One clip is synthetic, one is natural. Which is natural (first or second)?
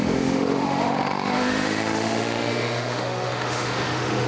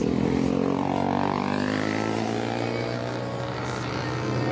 second